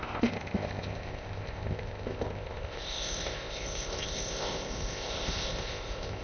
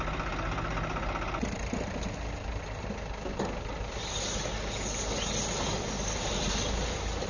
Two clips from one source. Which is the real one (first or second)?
second